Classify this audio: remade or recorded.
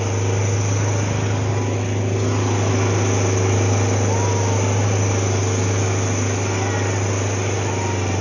recorded